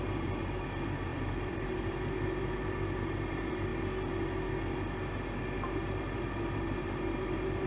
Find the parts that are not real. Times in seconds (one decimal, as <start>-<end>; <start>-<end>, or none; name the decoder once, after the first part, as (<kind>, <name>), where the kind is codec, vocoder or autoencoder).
0.0-3.7 (vocoder, BigVGAN v2); 5.7-7.7